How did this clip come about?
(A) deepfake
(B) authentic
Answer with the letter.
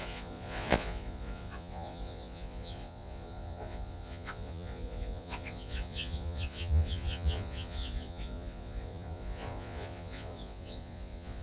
A